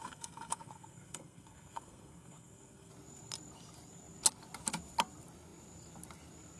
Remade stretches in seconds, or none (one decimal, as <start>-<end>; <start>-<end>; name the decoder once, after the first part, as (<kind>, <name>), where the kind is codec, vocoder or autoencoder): 0.0-2.9 (codec, SNAC)